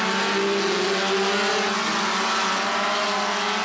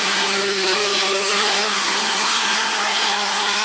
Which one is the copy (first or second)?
second